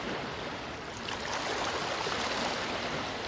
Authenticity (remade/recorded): recorded